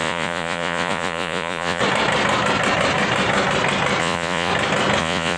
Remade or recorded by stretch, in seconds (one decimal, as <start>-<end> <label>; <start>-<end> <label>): 0.0-1.8 remade; 1.8-4.0 recorded; 4.0-4.5 remade; 4.5-5.0 recorded; 5.0-5.4 remade